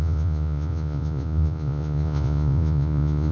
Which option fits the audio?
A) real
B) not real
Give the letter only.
B